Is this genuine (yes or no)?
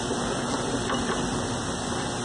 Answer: yes